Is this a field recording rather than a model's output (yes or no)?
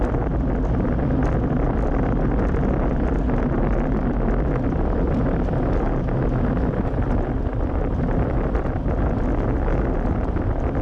yes